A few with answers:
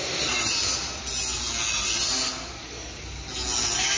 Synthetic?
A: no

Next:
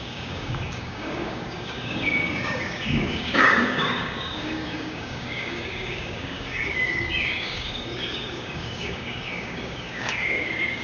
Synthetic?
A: yes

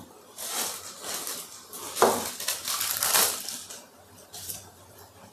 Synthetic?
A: no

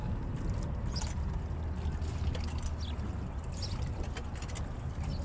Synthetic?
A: no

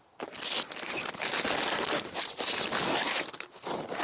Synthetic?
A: no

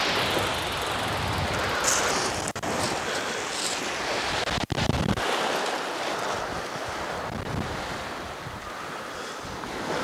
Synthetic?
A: no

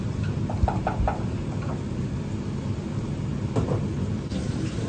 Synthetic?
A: no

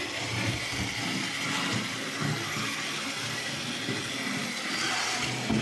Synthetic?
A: no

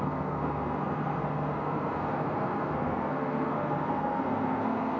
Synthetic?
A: yes